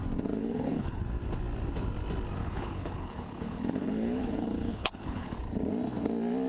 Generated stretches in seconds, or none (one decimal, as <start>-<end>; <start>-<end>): 0.4-1.0; 2.4-5.4